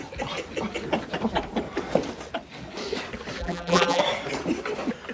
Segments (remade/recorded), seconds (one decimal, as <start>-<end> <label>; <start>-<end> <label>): 0.0-3.4 recorded; 3.4-4.0 remade; 4.0-5.1 recorded